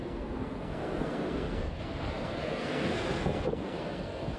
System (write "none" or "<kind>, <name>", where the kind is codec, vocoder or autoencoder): codec, SNAC